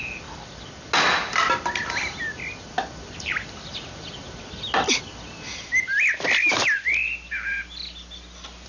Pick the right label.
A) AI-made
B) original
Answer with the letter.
B